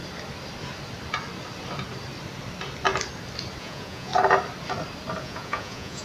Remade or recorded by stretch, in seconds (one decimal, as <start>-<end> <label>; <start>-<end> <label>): 0.0-3.6 recorded; 3.6-4.1 remade; 4.1-5.2 recorded; 5.2-6.0 remade

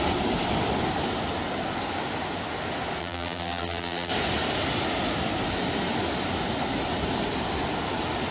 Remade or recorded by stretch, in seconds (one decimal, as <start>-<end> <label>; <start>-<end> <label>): 0.0-3.0 recorded; 3.0-4.1 remade; 4.1-8.3 recorded

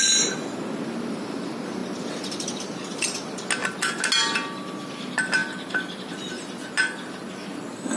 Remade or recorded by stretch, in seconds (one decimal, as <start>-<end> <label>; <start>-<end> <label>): 0.0-8.0 recorded

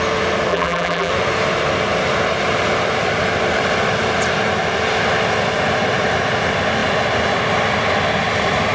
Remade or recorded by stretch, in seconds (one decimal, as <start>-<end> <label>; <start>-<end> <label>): 0.0-0.5 recorded; 0.5-1.1 remade; 1.1-8.7 recorded

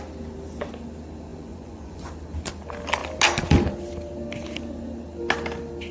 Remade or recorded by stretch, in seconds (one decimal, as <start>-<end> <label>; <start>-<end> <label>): 0.0-1.3 recorded; 1.3-2.1 remade; 2.1-5.9 recorded